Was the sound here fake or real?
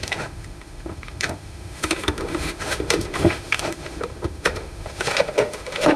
fake